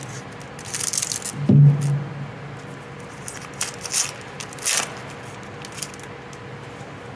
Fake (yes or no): no